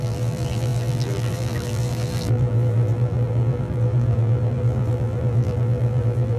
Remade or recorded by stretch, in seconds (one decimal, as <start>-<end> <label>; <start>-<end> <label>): 0.0-6.4 remade